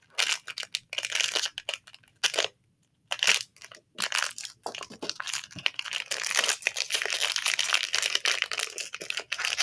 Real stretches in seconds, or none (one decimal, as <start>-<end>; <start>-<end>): 0.0-9.6